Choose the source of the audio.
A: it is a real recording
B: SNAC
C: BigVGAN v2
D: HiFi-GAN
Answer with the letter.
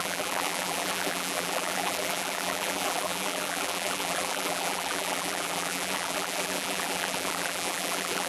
C